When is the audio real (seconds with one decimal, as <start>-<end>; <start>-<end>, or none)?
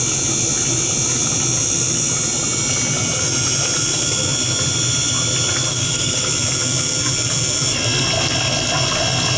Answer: 0.0-5.7; 6.3-9.4